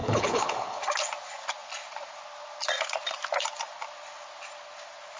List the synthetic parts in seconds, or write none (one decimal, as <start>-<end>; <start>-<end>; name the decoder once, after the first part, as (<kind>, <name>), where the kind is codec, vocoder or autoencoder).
0.0-0.8 (codec, HILCodec)